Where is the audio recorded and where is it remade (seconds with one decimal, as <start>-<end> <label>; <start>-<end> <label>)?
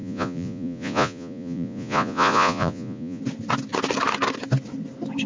0.0-3.2 remade; 3.2-5.3 recorded